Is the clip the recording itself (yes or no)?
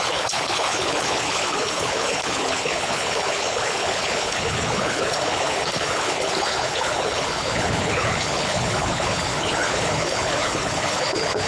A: no